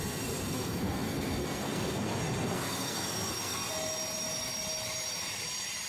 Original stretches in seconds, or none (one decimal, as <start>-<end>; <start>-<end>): 3.6-5.9